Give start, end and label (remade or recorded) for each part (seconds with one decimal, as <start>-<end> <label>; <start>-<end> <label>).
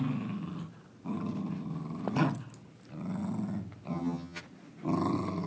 0.0-3.9 recorded; 3.9-4.4 remade; 4.4-5.5 recorded